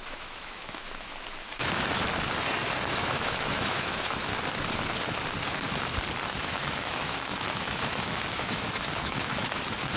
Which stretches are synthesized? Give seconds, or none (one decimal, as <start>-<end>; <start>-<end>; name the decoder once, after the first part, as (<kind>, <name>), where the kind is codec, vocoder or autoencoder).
0.0-2.0 (autoencoder, DAC-VAE); 3.0-4.3; 6.4-10.0